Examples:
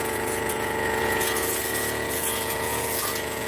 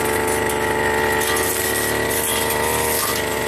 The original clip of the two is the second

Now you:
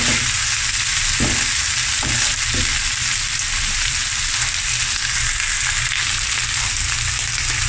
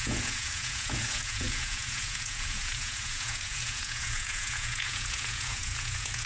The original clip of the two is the first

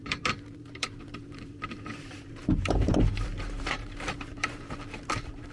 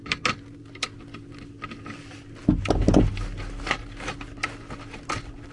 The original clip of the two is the second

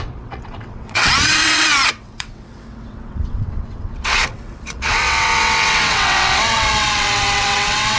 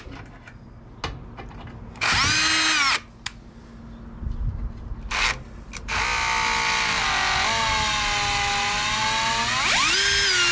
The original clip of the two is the second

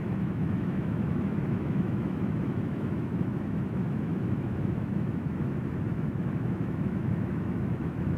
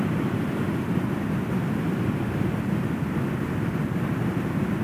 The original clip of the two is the second